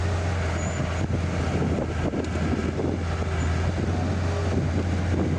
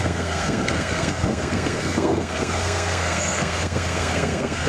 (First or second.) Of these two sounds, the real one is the first